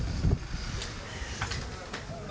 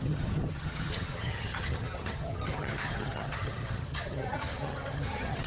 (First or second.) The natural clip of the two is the first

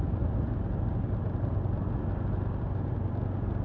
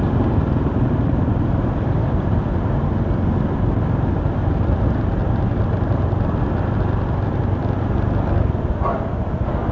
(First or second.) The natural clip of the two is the first